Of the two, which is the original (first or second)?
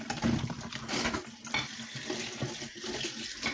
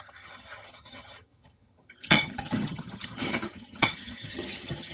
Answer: first